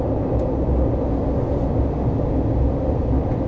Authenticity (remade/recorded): recorded